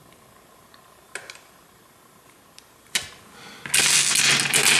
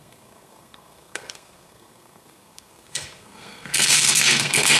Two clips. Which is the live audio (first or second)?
first